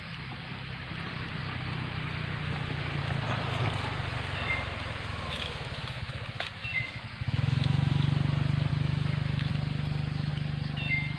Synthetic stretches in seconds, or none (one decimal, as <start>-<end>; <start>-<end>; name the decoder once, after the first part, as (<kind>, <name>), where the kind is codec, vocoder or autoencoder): 5.1-7.9 (autoencoder, DAC-VAE); 8.7-9.5